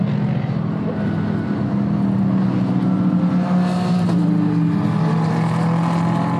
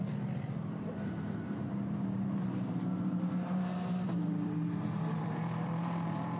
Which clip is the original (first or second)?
first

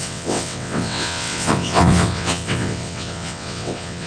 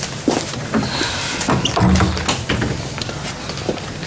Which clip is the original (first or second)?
second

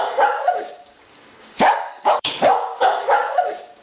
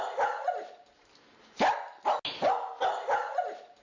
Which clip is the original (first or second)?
second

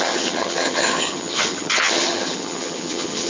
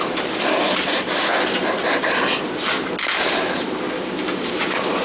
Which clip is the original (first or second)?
second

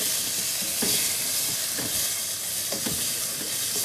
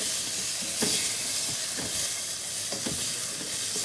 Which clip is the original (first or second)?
second